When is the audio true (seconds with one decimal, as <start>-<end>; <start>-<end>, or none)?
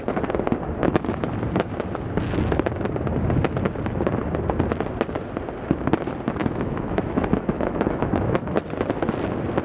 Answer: 0.0-6.4; 8.6-9.6